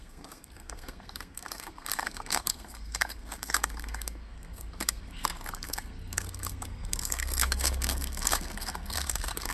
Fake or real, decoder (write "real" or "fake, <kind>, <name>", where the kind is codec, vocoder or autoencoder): fake, codec, SNAC